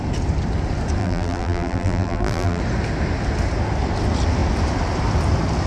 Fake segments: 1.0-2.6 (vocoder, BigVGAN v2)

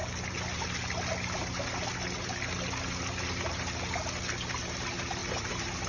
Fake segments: 5.2-5.9 (vocoder, BigVGAN v2)